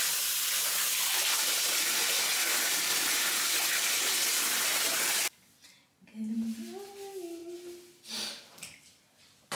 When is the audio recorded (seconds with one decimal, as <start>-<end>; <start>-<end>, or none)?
0.0-9.5